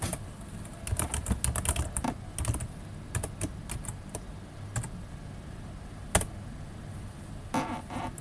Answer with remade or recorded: recorded